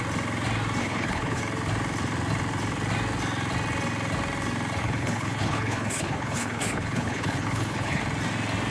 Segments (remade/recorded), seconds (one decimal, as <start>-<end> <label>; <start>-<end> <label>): 0.0-0.8 recorded; 0.8-1.4 remade; 1.4-4.8 recorded; 4.8-8.0 remade; 8.0-8.7 recorded